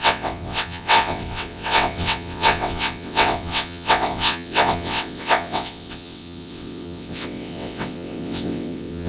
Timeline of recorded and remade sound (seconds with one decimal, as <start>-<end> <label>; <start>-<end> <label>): 0.0-9.1 remade